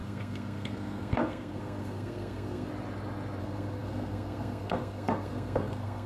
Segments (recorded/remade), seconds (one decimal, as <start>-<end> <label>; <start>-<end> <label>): 0.0-2.7 remade; 2.7-3.4 recorded; 3.4-6.1 remade